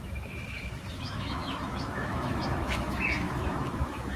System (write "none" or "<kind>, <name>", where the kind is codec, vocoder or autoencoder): autoencoder, DAC-VAE